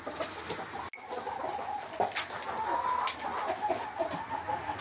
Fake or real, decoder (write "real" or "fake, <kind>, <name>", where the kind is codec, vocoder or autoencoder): real